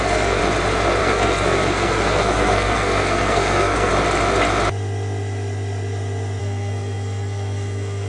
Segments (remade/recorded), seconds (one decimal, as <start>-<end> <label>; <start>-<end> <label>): 0.0-0.4 remade; 0.4-1.0 recorded; 1.0-3.9 remade; 3.9-6.4 recorded; 6.4-8.1 remade